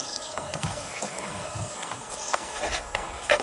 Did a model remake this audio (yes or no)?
yes